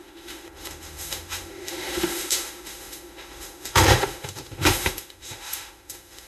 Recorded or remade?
remade